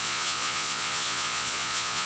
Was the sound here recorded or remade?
remade